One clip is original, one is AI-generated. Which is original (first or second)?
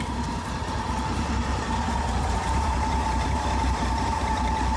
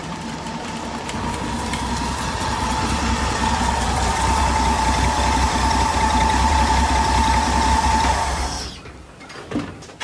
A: second